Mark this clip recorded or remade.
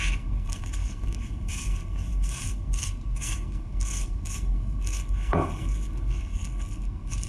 remade